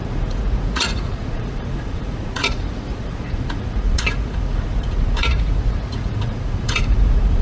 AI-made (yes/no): yes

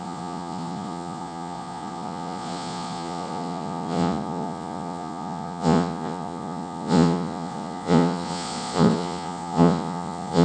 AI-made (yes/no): yes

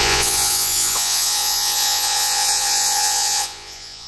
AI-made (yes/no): yes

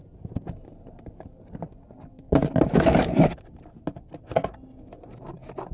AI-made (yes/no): no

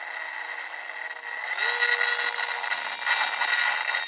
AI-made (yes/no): no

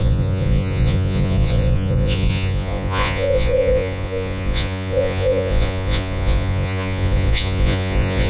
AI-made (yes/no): yes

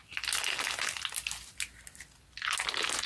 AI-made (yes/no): no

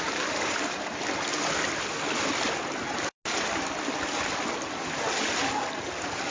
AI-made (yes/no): no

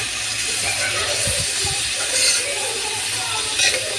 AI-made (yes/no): no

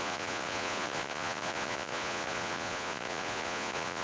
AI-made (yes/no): yes